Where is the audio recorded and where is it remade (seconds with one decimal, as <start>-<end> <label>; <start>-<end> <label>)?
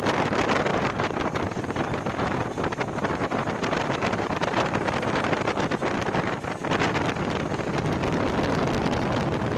0.0-0.7 recorded; 0.7-5.5 remade; 5.5-9.6 recorded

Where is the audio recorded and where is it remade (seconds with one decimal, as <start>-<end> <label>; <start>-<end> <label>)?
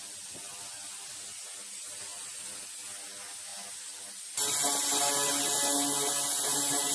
0.0-2.1 recorded; 2.1-2.7 remade; 2.7-6.9 recorded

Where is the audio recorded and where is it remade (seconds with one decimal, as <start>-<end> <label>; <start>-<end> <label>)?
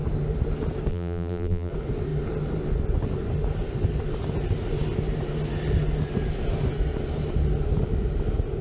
0.0-0.9 recorded; 0.9-1.7 remade; 1.7-8.6 recorded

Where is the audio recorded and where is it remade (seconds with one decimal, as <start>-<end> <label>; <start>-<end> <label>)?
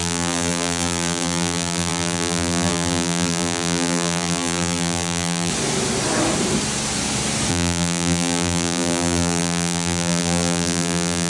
0.0-5.5 remade; 5.5-7.5 recorded; 7.5-11.3 remade